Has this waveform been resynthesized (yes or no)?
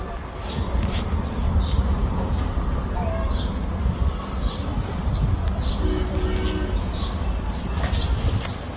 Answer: no